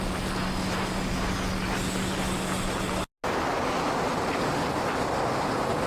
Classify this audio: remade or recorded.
recorded